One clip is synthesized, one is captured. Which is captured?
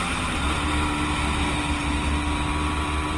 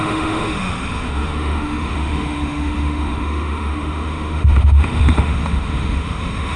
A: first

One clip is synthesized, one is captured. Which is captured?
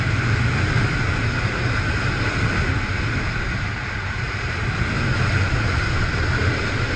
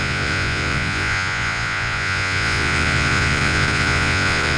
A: first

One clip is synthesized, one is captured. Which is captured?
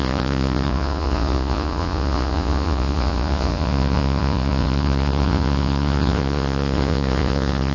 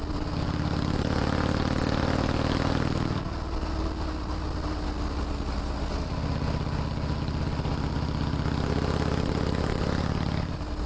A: second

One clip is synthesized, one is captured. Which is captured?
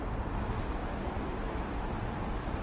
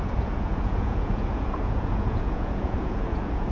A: first